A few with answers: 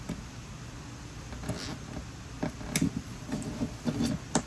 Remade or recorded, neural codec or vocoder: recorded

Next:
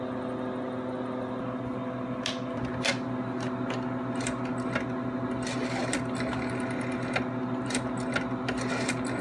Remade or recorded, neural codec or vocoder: recorded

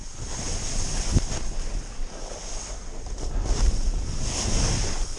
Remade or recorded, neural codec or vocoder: recorded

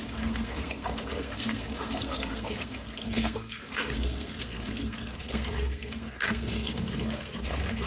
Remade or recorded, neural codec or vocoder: remade, codec, SNAC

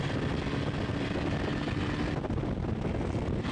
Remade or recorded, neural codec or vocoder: recorded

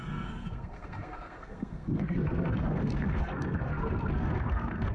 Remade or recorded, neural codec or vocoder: remade, codec, SNAC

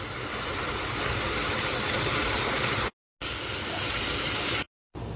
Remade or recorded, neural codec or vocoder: recorded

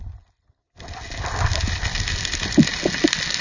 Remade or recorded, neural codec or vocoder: recorded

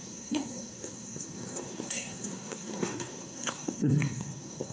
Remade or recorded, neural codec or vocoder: remade, codec, SNAC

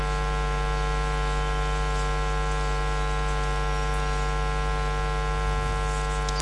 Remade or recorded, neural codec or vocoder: recorded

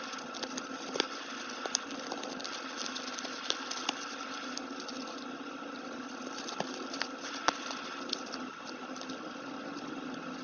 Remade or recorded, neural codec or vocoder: recorded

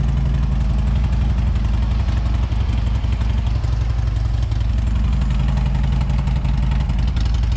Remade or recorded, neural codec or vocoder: recorded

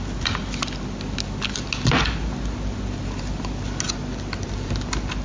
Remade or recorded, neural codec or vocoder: recorded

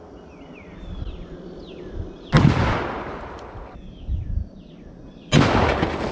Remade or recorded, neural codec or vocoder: recorded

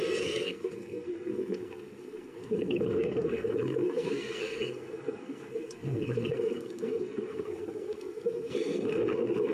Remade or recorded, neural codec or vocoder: remade, codec, SNAC